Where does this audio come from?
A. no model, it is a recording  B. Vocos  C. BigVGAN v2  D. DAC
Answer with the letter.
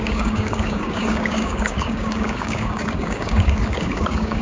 D